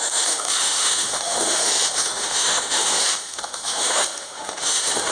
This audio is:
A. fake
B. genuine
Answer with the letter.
A